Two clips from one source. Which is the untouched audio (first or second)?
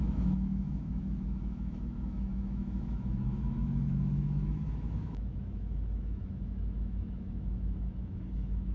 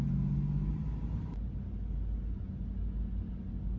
second